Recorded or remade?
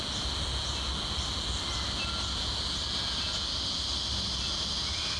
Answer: recorded